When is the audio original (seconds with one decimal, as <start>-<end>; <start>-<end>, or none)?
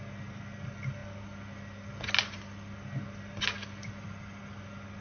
0.0-5.0